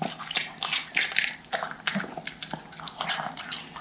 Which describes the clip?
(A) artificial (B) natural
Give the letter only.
B